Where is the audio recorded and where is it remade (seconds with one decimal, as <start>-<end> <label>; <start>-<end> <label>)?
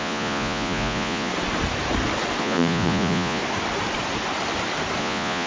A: 0.0-1.3 remade; 1.3-2.4 recorded; 2.4-3.4 remade; 3.4-5.0 recorded; 5.0-5.5 remade